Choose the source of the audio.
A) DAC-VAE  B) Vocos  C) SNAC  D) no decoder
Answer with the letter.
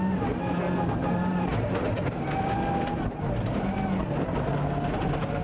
D